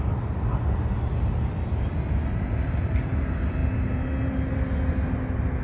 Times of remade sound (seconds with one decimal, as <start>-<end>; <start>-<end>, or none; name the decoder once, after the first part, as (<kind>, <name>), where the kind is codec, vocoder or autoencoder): none